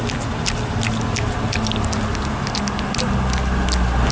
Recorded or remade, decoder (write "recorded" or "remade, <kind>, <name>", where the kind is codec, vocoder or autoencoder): recorded